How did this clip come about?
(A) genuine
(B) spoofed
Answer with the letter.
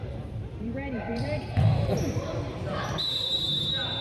B